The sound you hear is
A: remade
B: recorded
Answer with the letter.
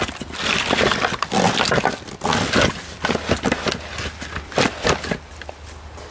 B